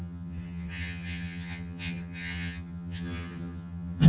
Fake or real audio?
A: fake